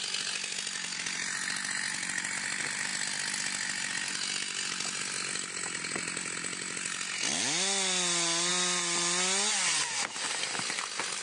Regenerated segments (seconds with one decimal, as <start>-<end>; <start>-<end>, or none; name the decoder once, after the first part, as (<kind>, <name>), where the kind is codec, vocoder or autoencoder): none